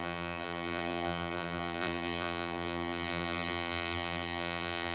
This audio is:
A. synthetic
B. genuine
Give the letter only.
A